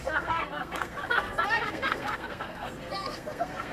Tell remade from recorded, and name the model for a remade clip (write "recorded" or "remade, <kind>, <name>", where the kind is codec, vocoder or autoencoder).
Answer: remade, codec, SNAC